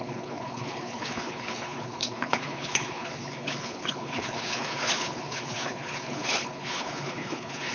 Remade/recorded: remade